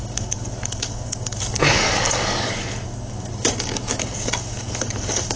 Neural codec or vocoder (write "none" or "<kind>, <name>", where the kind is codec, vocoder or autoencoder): codec, DAC